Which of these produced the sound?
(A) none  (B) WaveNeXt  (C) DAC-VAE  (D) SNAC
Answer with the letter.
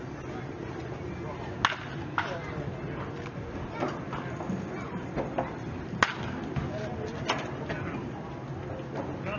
A